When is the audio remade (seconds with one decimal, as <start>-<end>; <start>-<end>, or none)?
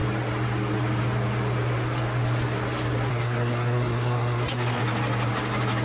3.1-4.8